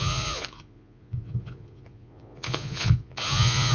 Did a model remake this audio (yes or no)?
yes